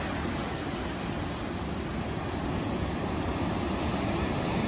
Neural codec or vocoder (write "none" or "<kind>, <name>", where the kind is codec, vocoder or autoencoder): none